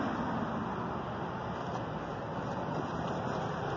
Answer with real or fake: real